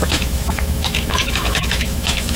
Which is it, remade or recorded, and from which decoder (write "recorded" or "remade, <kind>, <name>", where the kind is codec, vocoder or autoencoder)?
remade, autoencoder, DAC-VAE